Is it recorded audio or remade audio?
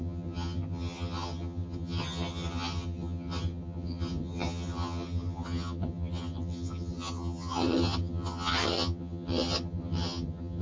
remade